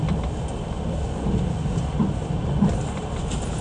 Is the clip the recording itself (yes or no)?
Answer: yes